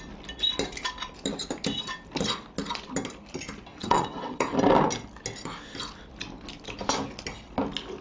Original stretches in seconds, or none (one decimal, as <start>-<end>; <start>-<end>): 0.0-3.7; 4.5-8.0